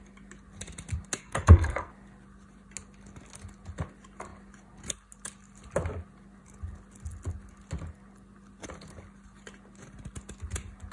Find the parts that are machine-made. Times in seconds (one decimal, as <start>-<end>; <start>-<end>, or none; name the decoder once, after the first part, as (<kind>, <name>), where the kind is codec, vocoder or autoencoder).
1.2-1.9 (codec, SNAC)